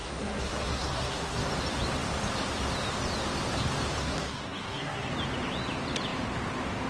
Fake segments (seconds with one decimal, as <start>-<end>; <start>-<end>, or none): 0.0-1.5; 4.0-5.1